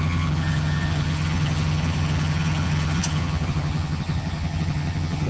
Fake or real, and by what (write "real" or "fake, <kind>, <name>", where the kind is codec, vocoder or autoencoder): fake, vocoder, HiFi-GAN